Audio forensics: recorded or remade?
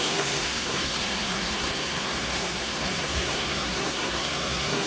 remade